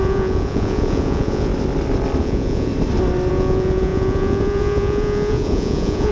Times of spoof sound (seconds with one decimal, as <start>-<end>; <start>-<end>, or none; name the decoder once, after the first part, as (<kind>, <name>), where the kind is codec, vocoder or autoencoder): 0.0-1.5 (vocoder, Vocos); 2.2-2.7; 3.3-6.1